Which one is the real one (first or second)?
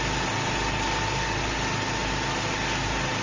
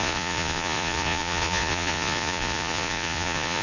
first